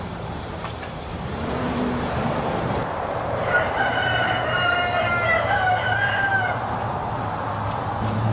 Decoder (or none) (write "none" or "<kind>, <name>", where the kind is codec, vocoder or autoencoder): vocoder, BigVGAN v2